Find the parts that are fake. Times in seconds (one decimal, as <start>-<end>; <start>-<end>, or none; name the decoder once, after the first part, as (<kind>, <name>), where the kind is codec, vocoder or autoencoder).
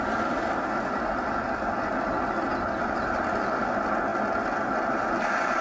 none